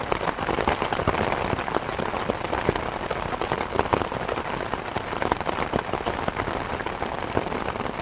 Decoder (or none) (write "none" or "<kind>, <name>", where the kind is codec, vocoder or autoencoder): none